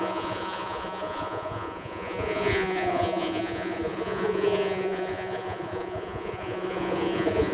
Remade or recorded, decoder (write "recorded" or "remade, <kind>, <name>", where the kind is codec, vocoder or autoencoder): remade, vocoder, Vocos